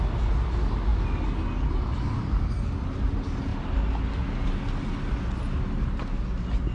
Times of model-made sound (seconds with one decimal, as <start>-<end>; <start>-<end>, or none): none